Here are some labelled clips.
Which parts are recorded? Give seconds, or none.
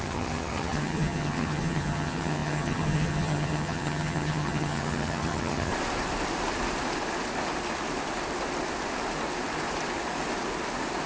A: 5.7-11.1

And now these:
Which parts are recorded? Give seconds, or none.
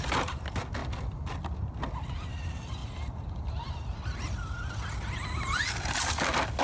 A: 0.0-6.6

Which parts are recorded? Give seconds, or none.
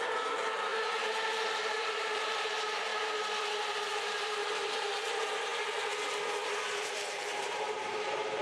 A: 2.9-3.5; 5.5-6.9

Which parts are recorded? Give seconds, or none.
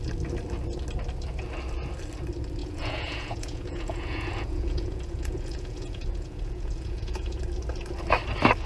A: 0.0-2.6; 7.4-8.7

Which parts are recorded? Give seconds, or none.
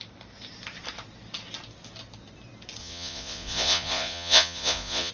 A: 0.0-2.8